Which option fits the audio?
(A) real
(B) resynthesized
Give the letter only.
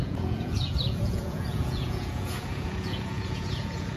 B